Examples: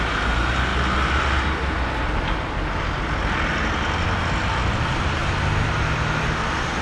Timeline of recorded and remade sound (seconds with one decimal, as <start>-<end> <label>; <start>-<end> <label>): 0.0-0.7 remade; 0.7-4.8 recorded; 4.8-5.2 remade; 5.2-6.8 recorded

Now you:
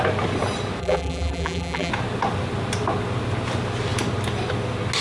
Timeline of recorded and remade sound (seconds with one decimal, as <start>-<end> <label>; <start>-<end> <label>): 0.0-0.8 recorded; 0.8-1.9 remade; 1.9-5.0 recorded

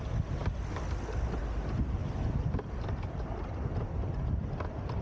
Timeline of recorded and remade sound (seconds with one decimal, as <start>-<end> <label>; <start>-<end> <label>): 0.0-2.0 recorded; 2.0-4.0 remade; 4.0-5.0 recorded